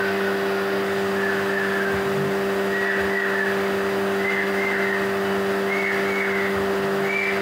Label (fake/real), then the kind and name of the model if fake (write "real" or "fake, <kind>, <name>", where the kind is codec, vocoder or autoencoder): real